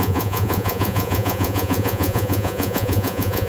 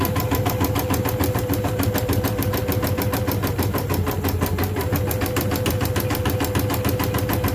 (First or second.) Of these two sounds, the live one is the second